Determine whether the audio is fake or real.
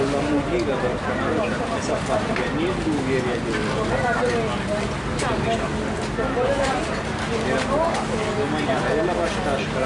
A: real